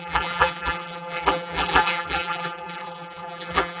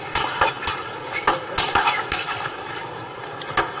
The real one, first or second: second